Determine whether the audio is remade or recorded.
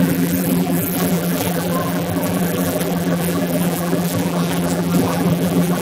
remade